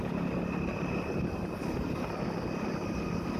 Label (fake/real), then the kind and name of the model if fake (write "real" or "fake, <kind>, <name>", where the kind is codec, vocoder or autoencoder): real